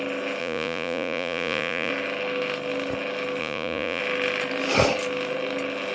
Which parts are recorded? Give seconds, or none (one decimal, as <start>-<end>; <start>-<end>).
0.0-0.4; 1.9-3.4; 4.0-5.9